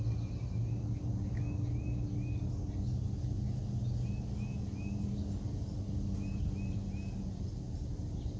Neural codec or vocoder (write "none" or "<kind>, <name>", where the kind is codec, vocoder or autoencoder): none